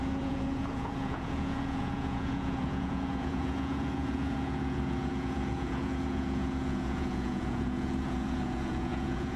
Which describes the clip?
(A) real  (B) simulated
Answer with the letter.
B